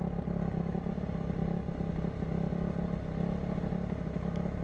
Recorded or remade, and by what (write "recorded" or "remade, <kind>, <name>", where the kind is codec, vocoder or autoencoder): recorded